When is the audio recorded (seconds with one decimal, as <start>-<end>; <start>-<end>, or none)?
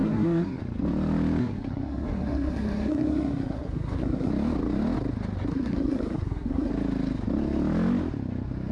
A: 0.6-1.4; 4.3-5.5; 6.7-8.7